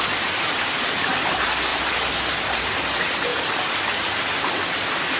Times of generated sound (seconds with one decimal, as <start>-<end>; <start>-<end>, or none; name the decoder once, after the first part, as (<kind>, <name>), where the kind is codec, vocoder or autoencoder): 1.7-2.4 (vocoder, BigVGAN v2)

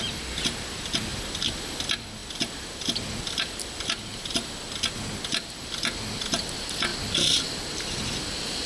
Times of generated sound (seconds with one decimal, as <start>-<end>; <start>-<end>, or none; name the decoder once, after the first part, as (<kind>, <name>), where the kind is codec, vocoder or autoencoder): none